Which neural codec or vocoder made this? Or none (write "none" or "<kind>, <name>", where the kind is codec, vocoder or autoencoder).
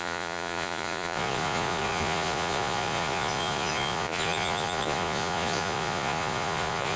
vocoder, Vocos